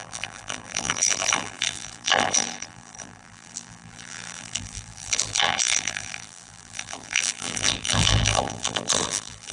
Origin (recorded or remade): remade